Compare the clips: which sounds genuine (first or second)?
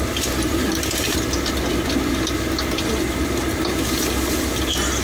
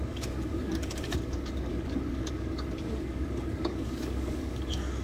first